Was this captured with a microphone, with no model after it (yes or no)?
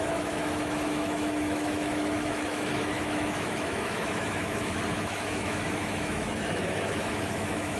no